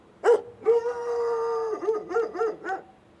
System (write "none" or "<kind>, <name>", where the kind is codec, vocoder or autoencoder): none